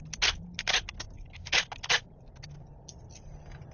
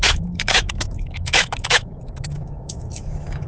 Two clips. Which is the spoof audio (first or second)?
second